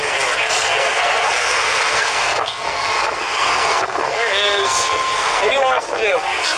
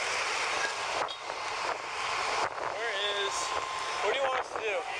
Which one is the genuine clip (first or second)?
second